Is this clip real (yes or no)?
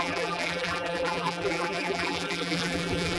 no